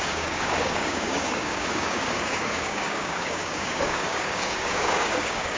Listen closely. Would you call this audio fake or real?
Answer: fake